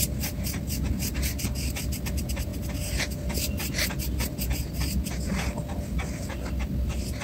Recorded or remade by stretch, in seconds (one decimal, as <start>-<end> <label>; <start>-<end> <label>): 0.0-7.2 recorded